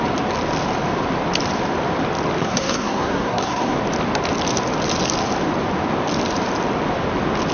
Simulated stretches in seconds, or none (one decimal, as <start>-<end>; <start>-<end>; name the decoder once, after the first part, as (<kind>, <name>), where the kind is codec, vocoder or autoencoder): 2.4-3.8 (codec, SNAC)